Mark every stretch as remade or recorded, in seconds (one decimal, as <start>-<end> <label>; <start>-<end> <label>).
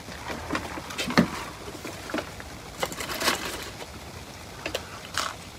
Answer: 0.0-3.9 recorded; 3.9-5.6 remade